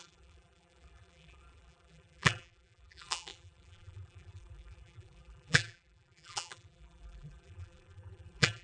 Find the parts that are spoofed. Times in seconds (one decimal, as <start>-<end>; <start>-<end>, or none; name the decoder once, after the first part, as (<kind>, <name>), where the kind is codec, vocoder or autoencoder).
0.0-8.6 (vocoder, BigVGAN v2)